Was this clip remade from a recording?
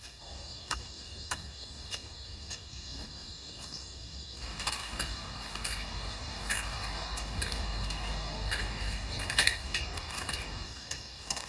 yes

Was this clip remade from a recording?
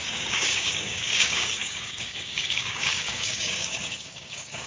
yes